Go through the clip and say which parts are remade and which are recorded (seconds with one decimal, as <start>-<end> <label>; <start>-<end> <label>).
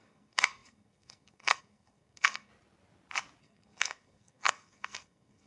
0.0-2.5 remade; 2.5-3.4 recorded; 3.4-5.5 remade